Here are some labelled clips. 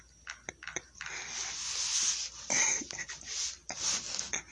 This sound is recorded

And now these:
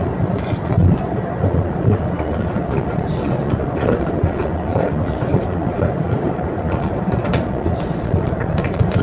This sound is remade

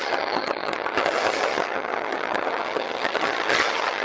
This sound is remade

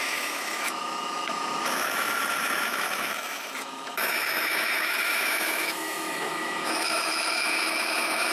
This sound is remade